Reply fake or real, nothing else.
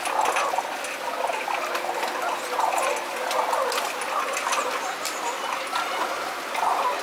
real